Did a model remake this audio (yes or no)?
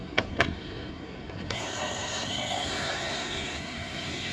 yes